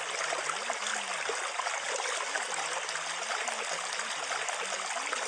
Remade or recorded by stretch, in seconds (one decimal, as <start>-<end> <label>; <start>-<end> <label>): 0.0-5.3 recorded